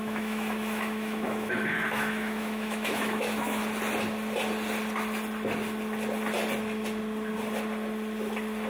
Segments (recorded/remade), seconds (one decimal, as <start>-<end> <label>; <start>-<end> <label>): 0.0-3.6 remade; 3.6-8.7 recorded